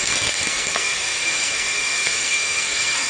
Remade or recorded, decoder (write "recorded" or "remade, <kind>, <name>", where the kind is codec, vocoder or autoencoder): remade, codec, SNAC